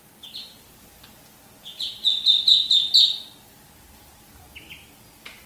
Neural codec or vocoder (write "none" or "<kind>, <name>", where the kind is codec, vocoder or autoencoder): none